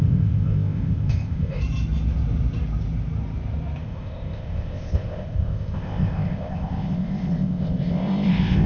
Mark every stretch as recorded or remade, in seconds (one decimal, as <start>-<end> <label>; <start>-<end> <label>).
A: 0.0-1.6 remade; 1.6-3.8 recorded; 3.8-8.7 remade